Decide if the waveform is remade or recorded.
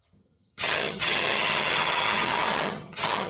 remade